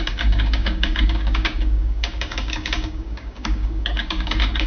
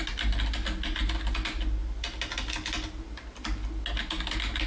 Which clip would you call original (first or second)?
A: second